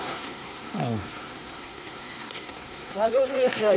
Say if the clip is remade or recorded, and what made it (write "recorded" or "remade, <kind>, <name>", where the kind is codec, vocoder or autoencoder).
remade, codec, SNAC